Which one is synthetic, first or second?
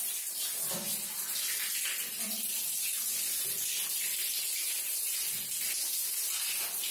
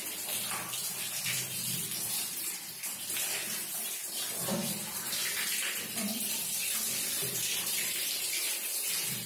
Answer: second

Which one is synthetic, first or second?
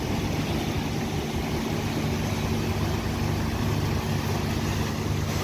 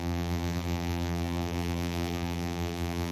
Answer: second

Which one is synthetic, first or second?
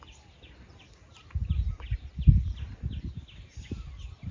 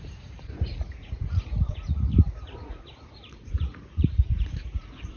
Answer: second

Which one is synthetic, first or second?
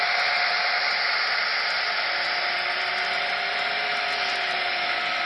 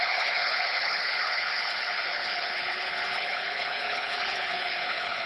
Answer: second